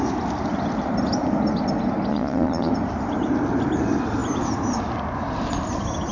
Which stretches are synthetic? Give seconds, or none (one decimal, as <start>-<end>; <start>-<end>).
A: 2.1-2.7